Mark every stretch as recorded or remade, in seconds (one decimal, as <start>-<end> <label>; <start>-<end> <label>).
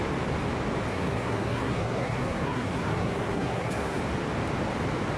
0.0-0.9 recorded; 0.9-4.0 remade; 4.0-5.2 recorded